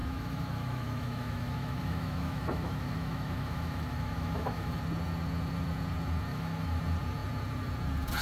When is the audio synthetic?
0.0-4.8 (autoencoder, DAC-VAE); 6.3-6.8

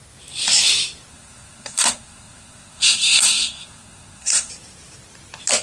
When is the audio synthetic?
1.1-4.5 (codec, SNAC)

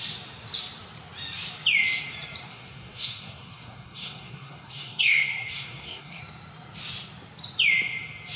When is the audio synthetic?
2.5-6.2 (codec, SNAC)

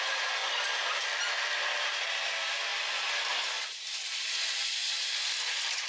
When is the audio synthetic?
none

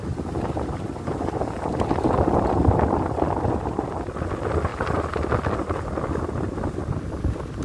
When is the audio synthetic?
none